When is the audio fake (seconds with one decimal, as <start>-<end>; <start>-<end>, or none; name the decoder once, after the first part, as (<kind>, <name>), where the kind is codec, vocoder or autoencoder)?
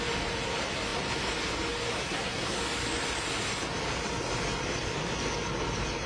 1.9-2.6 (codec, SNAC)